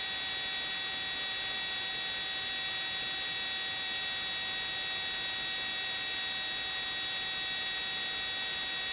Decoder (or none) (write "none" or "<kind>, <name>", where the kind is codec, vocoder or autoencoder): none